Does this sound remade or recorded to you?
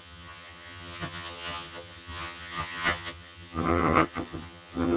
remade